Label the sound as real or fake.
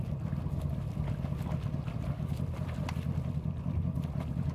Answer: real